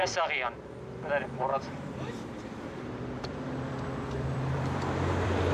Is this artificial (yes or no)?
yes